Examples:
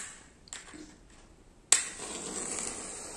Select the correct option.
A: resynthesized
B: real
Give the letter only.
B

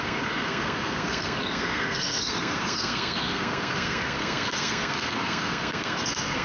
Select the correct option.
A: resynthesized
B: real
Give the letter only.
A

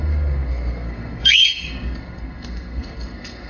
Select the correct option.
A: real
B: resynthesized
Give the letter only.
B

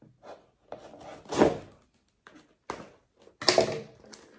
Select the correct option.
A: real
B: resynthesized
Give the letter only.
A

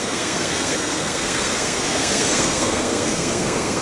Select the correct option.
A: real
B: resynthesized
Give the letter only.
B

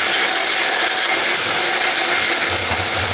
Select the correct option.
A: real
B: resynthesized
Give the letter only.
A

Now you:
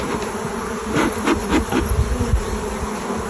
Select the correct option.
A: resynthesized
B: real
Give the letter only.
B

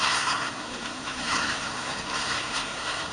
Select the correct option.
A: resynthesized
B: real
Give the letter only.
A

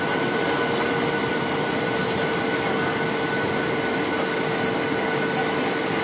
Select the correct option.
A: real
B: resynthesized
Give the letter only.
A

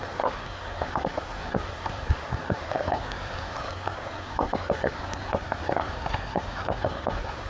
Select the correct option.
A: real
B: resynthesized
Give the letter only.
B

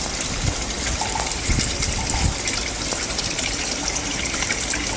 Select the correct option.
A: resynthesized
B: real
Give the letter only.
B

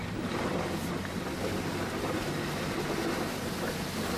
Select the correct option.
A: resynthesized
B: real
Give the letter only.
B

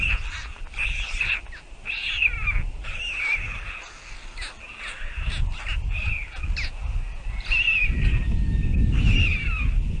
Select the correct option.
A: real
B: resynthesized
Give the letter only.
A